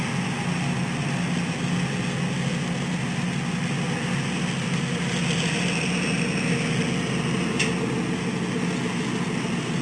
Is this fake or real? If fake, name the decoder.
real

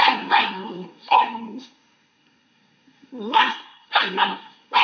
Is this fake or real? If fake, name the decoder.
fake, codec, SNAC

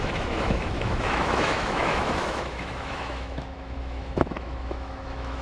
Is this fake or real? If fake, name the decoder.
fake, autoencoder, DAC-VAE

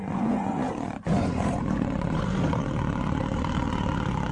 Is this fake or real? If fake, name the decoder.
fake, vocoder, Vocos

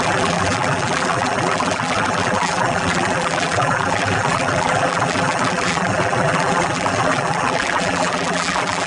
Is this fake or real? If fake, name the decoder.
fake, vocoder, BigVGAN v2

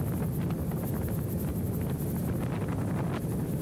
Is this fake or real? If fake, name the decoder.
real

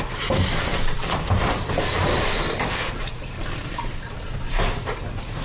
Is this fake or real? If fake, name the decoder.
real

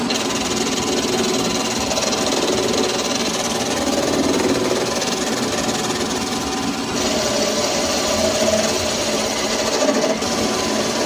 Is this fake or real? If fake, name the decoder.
real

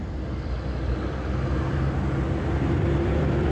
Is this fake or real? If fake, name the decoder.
fake, vocoder, BigVGAN v2